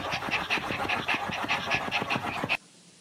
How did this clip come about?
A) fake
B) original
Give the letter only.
A